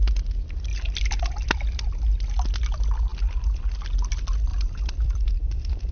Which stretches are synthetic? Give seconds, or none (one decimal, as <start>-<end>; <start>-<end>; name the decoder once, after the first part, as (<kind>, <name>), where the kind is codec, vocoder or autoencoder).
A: 0.7-1.5 (vocoder, BigVGAN v2); 3.1-3.7; 4.5-5.9